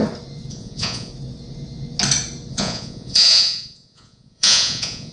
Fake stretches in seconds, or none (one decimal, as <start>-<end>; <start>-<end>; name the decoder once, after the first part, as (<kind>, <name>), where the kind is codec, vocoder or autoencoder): 0.5-1.1 (vocoder, Vocos); 2.5-5.1